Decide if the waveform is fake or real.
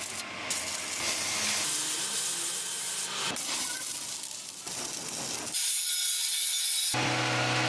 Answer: real